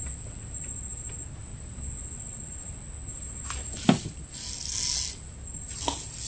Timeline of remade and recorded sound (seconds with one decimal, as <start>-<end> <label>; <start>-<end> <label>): 0.0-6.3 recorded